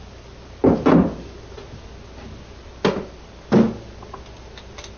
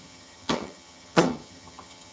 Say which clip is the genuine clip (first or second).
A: first